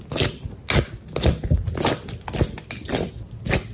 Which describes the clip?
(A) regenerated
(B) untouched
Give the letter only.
B